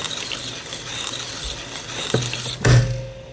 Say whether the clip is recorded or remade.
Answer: recorded